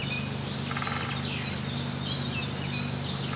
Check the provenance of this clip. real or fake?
real